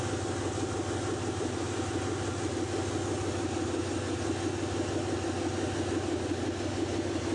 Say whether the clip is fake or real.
real